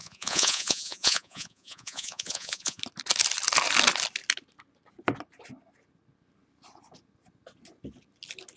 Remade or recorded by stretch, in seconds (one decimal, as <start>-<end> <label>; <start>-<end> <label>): 0.0-2.8 remade; 2.8-8.6 recorded